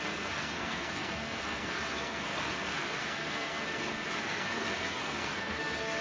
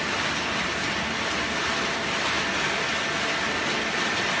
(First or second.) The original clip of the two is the second